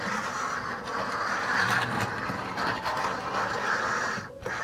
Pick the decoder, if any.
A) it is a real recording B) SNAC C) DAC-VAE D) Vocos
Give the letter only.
A